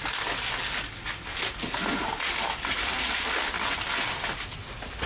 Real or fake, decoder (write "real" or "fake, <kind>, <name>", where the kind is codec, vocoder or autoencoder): real